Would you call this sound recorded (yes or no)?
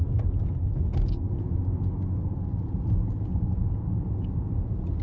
yes